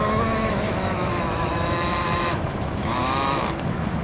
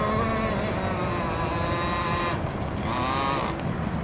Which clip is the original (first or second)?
second